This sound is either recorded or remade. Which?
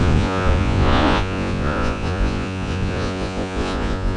remade